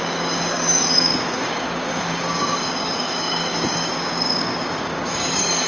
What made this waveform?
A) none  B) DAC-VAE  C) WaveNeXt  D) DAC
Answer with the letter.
D